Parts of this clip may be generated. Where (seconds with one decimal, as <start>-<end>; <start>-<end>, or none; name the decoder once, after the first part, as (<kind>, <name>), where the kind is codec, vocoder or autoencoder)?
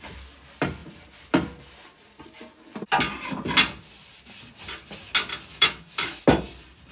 5.5-6.2 (autoencoder, DAC-VAE)